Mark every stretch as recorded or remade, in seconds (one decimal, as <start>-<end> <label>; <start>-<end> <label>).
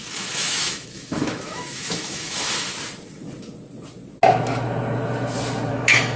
0.0-2.7 remade; 2.7-5.7 recorded; 5.7-6.2 remade